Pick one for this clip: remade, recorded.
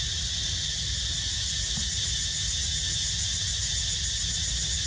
recorded